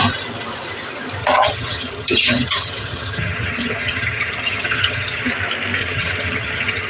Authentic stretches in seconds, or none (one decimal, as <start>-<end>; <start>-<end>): 0.0-1.2; 5.3-5.8